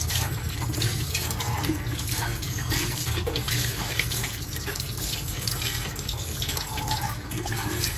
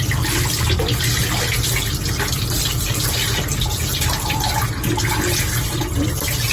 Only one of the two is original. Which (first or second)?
second